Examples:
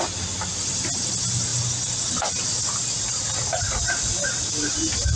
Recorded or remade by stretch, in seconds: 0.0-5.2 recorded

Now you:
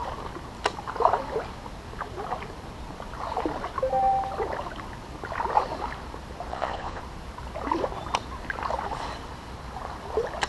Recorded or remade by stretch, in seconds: 0.0-6.5 recorded; 6.5-7.0 remade; 7.0-10.5 recorded

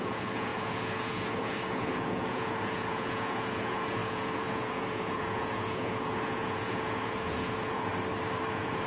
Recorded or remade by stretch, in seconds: 0.0-7.9 remade; 7.9-8.5 recorded; 8.5-8.9 remade

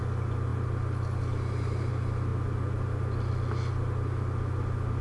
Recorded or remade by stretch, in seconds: 0.0-5.0 recorded